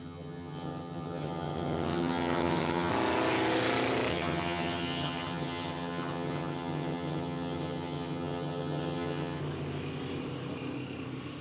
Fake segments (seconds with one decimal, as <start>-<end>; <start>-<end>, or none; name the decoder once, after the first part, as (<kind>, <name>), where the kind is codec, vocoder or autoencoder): 0.0-2.9 (vocoder, HiFi-GAN); 4.1-9.4